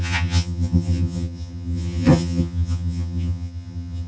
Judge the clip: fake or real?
fake